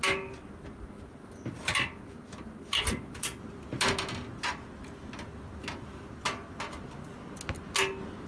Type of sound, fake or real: real